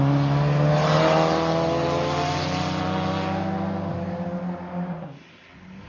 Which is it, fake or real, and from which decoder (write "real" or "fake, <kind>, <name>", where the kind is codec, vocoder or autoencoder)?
real